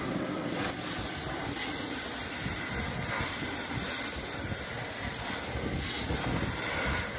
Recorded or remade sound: recorded